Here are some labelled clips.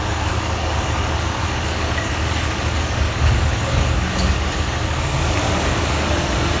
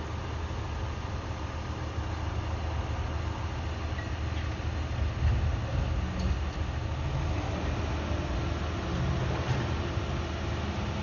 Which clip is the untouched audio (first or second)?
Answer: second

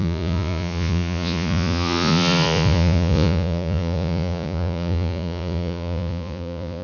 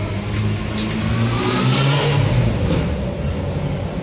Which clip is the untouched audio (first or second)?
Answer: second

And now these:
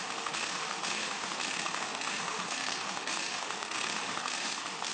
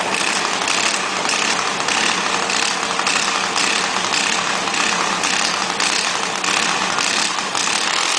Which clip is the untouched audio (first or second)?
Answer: second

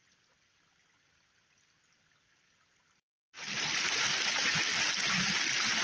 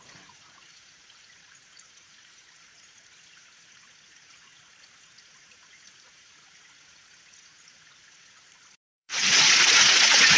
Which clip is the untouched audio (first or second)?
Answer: first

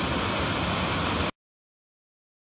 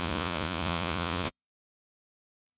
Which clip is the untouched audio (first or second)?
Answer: first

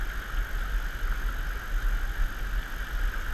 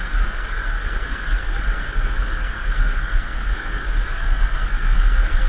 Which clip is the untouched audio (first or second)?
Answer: first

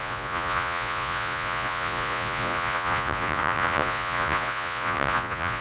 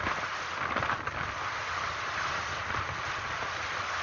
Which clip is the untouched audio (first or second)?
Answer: second